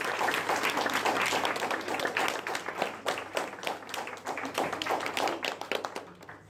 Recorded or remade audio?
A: recorded